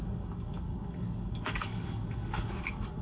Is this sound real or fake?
fake